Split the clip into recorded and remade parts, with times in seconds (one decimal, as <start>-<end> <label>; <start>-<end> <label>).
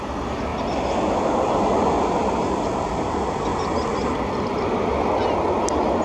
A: 0.0-3.5 recorded; 3.5-4.6 remade; 4.6-6.0 recorded